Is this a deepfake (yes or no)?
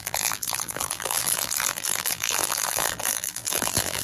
yes